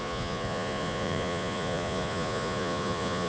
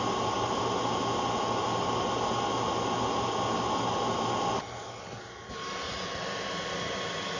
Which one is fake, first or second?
first